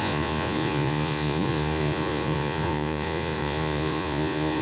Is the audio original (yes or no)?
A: no